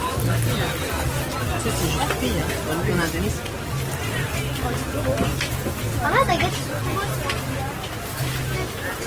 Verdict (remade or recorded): recorded